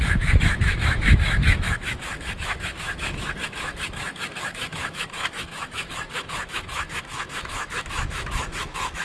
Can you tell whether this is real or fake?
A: fake